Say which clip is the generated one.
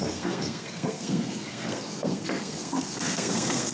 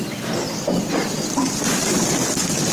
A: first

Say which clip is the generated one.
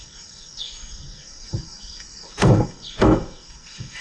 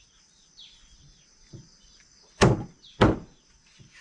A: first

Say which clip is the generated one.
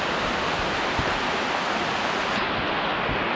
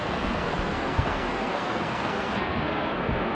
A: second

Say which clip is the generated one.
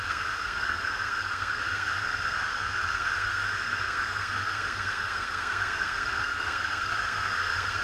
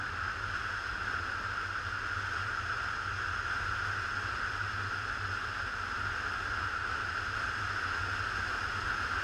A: first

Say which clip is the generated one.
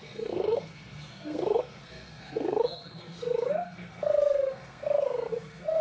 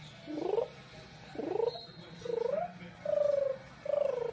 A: first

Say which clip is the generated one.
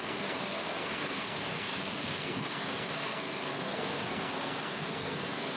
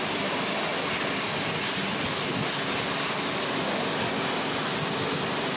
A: first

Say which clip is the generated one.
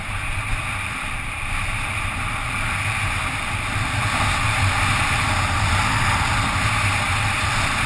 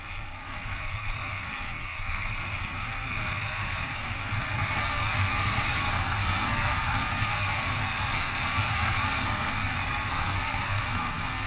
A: second